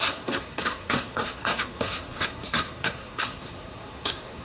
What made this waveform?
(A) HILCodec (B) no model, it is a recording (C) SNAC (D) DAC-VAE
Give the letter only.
C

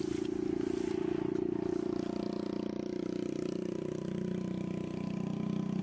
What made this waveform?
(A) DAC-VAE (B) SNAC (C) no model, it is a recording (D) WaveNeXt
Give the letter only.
C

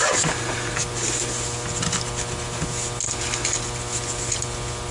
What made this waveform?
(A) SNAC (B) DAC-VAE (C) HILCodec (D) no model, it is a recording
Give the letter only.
D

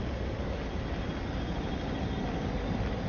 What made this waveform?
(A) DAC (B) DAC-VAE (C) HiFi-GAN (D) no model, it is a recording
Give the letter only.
D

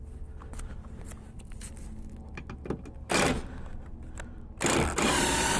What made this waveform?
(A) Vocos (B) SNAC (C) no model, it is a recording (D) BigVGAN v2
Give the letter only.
C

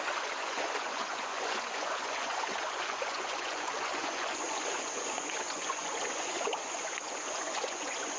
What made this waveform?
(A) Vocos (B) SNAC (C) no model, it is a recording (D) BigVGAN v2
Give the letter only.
A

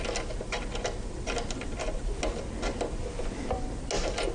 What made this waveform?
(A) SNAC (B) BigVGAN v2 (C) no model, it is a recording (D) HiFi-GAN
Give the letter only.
C